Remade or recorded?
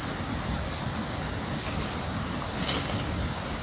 recorded